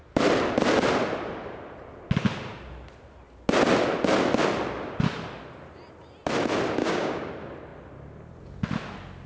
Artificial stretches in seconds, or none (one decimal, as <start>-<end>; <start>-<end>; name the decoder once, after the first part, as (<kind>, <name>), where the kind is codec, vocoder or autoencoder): 6.8-7.3 (codec, DAC)